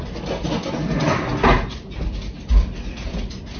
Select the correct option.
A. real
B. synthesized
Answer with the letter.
A